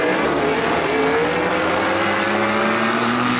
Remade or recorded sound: recorded